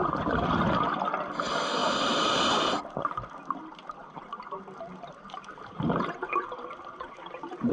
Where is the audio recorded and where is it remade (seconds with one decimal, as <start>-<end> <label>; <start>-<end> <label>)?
0.0-4.0 recorded; 4.0-4.5 remade; 4.5-4.9 recorded; 4.9-7.7 remade